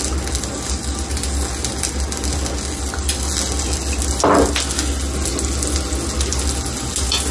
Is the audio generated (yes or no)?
no